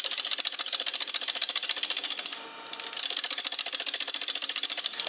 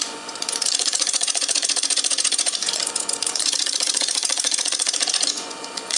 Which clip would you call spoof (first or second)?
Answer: second